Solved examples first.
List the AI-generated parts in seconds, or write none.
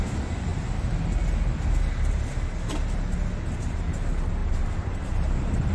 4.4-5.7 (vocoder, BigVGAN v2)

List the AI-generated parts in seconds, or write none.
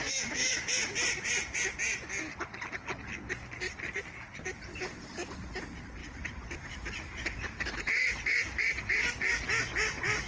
0.4-1.6 (vocoder, BigVGAN v2); 3.4-5.0; 6.0-9.1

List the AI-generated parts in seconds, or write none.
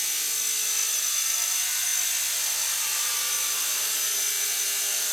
none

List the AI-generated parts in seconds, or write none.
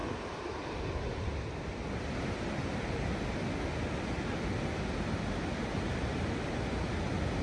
none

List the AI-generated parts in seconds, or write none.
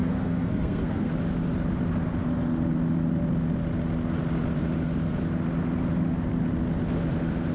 0.0-1.1 (codec, SNAC)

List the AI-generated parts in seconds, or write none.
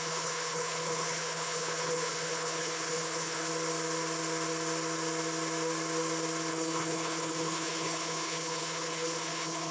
0.0-3.5 (codec, HILCodec); 6.5-9.7